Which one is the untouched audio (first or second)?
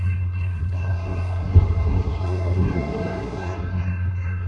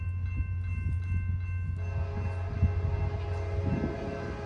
second